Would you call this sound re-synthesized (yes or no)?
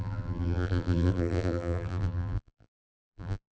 yes